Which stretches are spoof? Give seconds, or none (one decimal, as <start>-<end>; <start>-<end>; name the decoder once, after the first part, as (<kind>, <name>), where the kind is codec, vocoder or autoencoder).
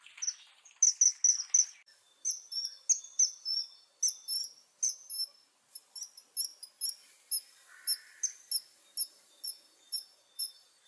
none